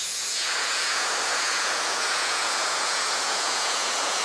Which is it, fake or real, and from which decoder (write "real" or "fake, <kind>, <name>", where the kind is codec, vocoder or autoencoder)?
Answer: fake, vocoder, Vocos